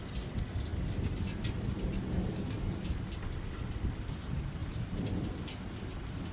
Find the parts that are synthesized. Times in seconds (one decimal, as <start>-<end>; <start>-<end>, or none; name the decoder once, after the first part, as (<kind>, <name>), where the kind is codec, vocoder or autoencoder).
0.7-1.6 (vocoder, BigVGAN v2); 4.6-6.3